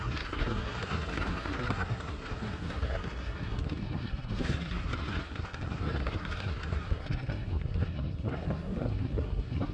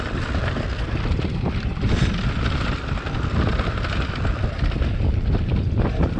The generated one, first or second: first